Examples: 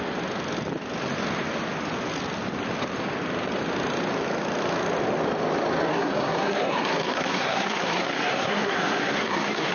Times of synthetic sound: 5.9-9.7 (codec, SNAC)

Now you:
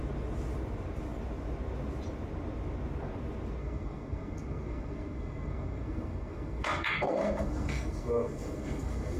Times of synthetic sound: 3.6-9.2 (codec, SNAC)

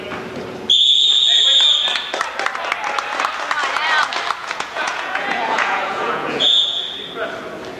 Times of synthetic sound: 4.4-6.8 (vocoder, Vocos)

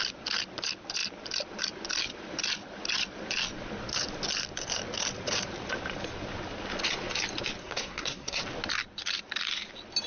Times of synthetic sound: 7.6-8.4 (codec, SNAC)

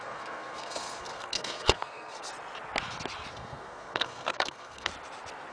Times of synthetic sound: 0.0-2.3 (codec, SNAC); 3.3-4.9

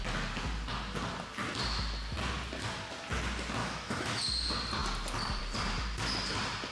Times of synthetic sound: 3.6-4.2 (autoencoder, DAC-VAE)

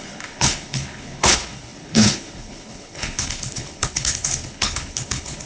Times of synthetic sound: 0.0-5.5 (codec, HILCodec)

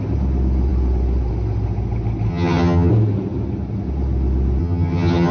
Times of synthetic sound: 2.3-2.9 (vocoder, HiFi-GAN); 4.6-5.3